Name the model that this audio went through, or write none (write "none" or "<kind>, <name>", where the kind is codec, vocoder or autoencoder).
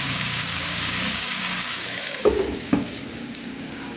codec, DAC